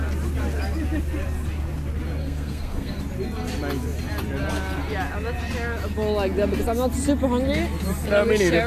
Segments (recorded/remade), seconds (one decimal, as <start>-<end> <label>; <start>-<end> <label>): 0.0-2.2 recorded; 2.2-3.0 remade; 3.0-8.7 recorded